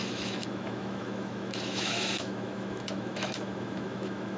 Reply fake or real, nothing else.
fake